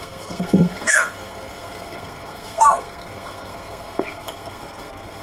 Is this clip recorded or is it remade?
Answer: remade